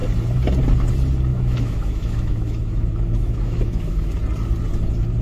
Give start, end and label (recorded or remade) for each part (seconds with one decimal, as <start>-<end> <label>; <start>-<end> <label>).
0.0-1.3 recorded; 1.3-4.1 remade; 4.1-5.2 recorded